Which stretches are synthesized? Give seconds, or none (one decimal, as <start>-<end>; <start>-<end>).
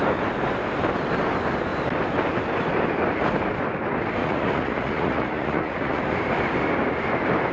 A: 4.2-6.0